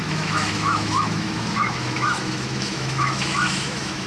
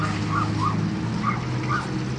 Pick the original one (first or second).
second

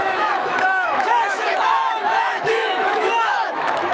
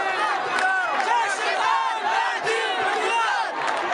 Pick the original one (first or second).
second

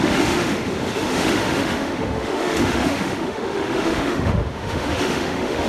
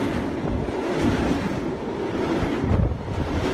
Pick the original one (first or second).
second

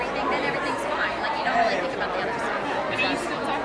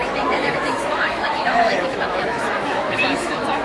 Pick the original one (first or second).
first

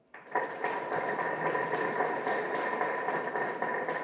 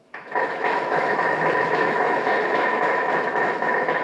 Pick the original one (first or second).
first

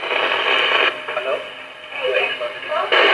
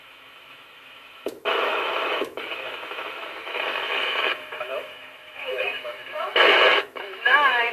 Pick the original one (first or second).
first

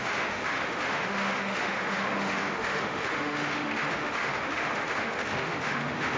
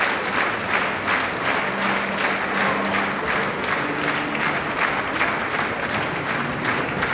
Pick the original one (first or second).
second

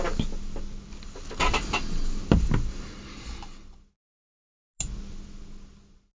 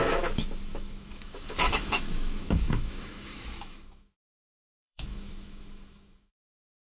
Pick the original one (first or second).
first